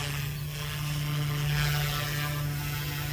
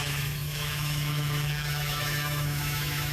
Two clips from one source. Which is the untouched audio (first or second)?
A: first